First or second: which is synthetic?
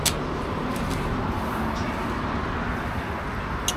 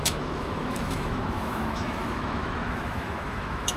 second